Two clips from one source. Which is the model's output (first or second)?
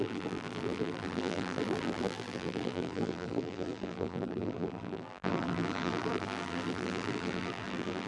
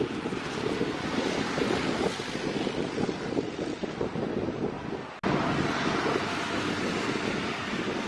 first